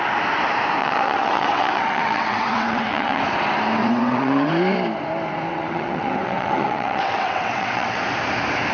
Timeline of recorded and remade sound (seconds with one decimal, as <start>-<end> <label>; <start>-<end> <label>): 0.0-0.8 recorded; 0.8-3.2 remade; 3.2-3.8 recorded; 3.8-4.5 remade; 4.5-5.5 recorded; 5.5-8.0 remade; 8.0-8.7 recorded